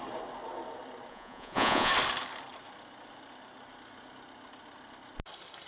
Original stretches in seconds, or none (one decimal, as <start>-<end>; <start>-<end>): 0.0-1.1; 1.9-5.7